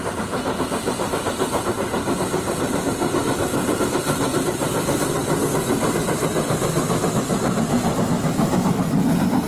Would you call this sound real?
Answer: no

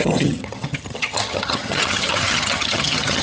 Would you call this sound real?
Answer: no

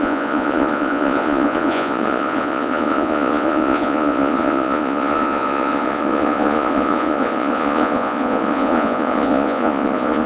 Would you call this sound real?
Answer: no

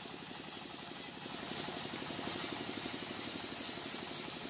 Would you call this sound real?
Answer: yes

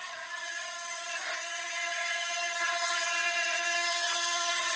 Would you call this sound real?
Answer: no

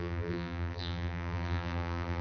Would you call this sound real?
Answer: no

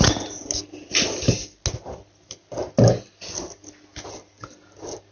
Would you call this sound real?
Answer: yes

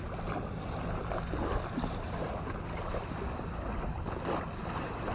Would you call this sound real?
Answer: yes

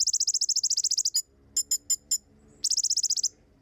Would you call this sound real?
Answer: yes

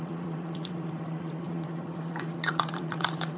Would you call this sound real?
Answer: no